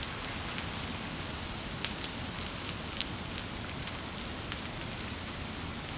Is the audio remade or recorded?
recorded